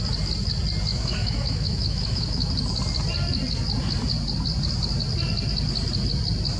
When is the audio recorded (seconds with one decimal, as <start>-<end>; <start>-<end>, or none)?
0.0-0.9; 2.5-6.6